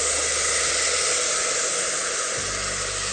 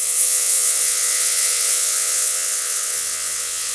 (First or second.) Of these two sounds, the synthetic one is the second